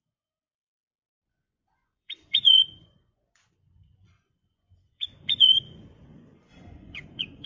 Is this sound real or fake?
fake